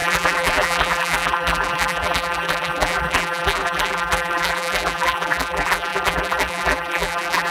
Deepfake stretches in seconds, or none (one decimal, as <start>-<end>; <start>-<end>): 0.0-7.5